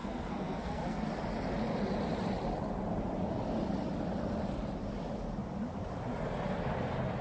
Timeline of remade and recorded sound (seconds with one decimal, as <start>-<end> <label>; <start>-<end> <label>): 0.0-1.0 remade; 1.0-7.2 recorded